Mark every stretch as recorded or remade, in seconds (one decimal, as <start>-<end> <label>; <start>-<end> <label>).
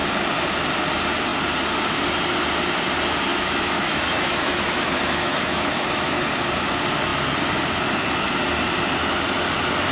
0.0-3.3 recorded; 3.3-6.2 remade; 6.2-9.9 recorded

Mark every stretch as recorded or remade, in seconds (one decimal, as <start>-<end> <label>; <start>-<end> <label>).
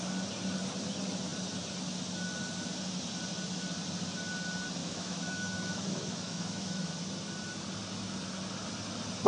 0.0-4.8 recorded; 4.8-6.9 remade; 6.9-9.3 recorded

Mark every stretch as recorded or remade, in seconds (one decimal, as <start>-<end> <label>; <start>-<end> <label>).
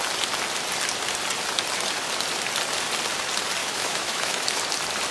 0.0-3.6 recorded; 3.6-4.6 remade; 4.6-5.1 recorded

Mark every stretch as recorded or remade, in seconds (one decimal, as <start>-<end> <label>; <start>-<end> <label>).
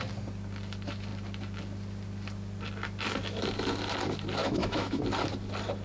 0.0-4.4 recorded; 4.4-5.0 remade; 5.0-5.8 recorded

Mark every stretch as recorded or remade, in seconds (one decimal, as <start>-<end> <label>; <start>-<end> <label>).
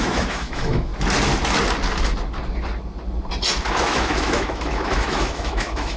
0.0-0.9 remade; 0.9-3.8 recorded; 3.8-6.0 remade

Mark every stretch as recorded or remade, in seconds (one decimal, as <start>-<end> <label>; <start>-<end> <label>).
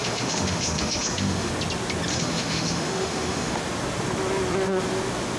0.0-1.5 remade; 1.5-2.1 recorded; 2.1-3.6 remade; 3.6-5.4 recorded